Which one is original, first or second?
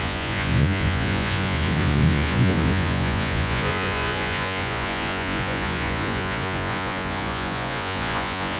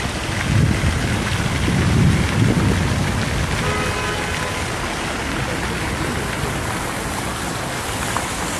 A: second